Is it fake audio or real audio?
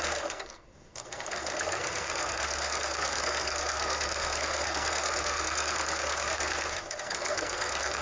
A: fake